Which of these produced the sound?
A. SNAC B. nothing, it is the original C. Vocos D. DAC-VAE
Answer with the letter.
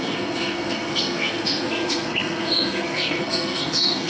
A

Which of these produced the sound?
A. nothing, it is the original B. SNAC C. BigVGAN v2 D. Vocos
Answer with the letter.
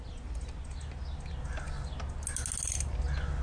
A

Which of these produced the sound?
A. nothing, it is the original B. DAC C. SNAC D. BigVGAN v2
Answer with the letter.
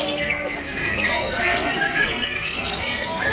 C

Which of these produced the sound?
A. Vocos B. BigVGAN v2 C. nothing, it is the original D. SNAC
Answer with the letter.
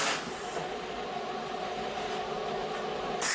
C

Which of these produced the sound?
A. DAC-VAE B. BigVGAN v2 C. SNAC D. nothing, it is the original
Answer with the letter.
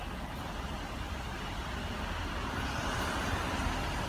D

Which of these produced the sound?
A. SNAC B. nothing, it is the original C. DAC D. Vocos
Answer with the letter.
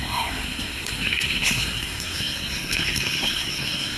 A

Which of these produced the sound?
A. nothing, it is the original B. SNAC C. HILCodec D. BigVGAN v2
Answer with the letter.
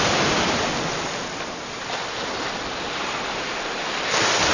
A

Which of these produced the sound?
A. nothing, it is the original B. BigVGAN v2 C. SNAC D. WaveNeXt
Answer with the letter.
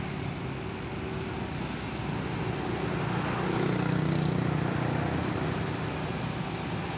A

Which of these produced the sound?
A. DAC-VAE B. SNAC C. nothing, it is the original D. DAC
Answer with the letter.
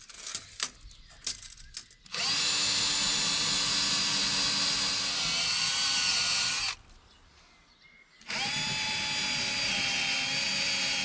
C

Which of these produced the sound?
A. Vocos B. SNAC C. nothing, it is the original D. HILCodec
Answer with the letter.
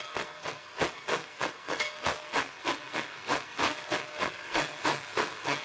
B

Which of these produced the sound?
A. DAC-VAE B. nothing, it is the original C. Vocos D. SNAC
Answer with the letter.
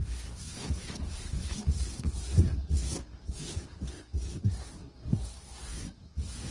D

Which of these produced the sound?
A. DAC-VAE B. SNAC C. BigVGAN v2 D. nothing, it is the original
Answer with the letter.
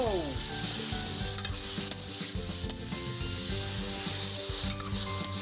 D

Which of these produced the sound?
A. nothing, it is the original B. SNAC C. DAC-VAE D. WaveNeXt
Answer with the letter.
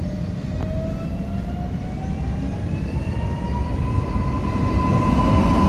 A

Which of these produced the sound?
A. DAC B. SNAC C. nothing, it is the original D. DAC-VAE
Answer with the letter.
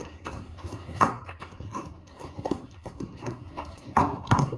B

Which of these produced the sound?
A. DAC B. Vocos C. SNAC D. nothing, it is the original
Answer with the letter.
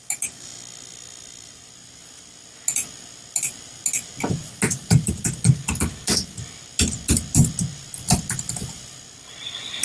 D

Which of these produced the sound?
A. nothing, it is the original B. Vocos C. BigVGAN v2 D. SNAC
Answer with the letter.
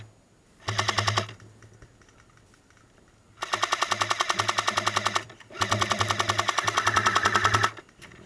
A